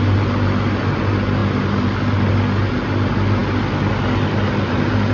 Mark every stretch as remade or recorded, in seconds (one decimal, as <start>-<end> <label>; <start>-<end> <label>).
0.0-5.1 recorded